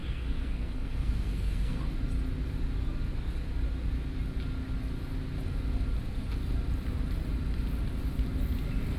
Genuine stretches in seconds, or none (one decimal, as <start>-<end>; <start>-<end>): 1.9-9.0

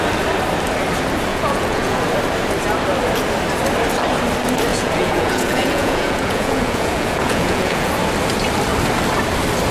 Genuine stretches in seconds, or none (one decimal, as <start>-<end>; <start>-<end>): 0.0-1.3; 2.0-4.7; 7.9-9.7